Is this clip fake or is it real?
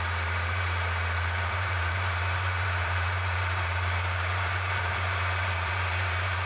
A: fake